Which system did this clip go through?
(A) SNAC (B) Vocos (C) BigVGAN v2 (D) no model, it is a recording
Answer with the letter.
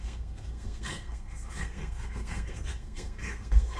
A